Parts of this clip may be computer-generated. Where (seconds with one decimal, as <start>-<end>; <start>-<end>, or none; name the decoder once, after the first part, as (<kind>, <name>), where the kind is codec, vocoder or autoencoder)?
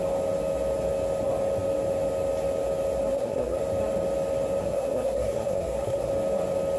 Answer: 3.1-3.6 (codec, SNAC); 4.6-6.1